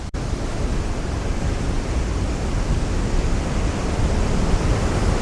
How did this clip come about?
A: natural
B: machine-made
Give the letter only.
A